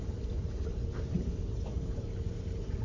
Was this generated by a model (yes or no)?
yes